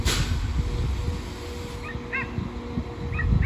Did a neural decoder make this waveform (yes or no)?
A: no